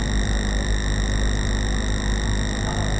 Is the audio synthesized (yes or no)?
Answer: no